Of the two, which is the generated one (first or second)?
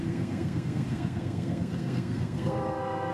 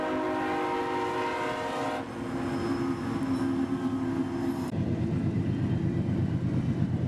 first